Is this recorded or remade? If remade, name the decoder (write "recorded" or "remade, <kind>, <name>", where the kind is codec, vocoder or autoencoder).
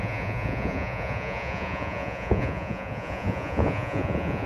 remade, vocoder, Vocos